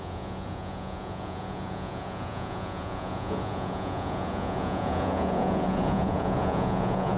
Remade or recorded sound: remade